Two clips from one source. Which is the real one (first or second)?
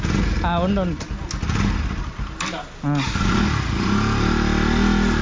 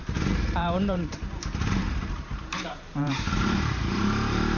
first